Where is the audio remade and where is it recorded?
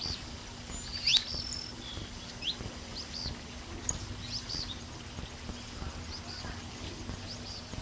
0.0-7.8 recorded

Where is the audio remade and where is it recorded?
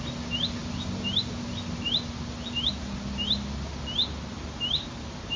0.0-5.4 recorded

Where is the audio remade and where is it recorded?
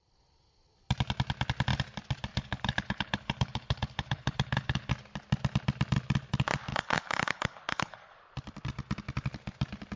0.0-2.3 recorded; 2.3-4.9 remade; 4.9-6.7 recorded; 6.7-8.2 remade; 8.2-10.0 recorded